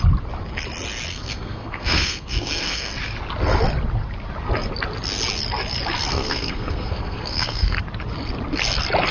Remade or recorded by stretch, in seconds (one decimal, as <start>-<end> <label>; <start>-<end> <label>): 0.0-1.1 recorded; 1.1-2.9 remade; 2.9-6.1 recorded; 6.1-7.8 remade; 7.8-9.1 recorded